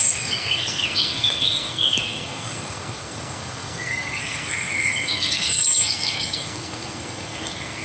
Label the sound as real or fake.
fake